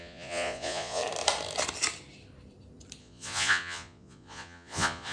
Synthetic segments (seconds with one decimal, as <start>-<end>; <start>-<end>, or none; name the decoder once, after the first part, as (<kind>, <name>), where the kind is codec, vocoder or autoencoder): 0.0-1.0 (vocoder, Vocos); 3.0-5.1